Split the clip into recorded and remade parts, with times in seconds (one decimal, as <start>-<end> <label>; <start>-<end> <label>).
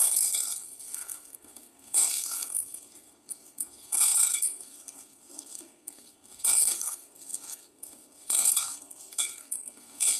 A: 0.0-10.2 remade